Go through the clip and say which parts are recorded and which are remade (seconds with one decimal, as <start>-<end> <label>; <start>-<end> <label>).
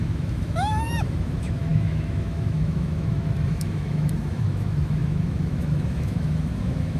0.0-7.0 remade